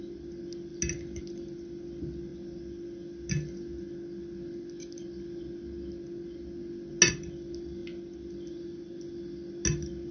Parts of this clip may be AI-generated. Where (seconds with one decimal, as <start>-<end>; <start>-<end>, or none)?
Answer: none